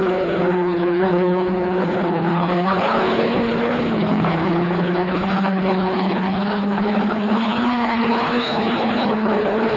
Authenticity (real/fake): fake